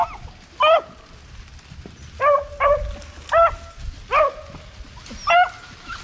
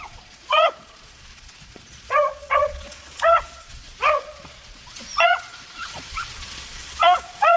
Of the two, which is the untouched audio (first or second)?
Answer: first